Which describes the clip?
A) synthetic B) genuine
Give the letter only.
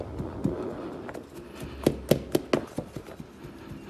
B